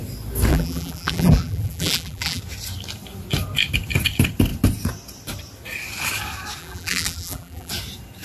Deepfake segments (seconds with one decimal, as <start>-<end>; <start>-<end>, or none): 0.5-2.4; 6.6-7.7